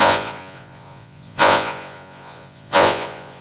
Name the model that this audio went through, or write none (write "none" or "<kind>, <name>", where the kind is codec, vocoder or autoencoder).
vocoder, Vocos